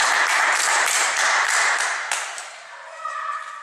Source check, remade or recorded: remade